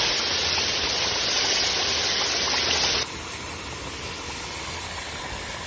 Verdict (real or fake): real